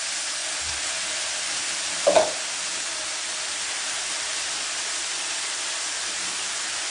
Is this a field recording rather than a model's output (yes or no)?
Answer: no